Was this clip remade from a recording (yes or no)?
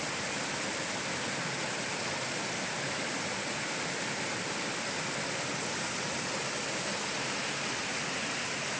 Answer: no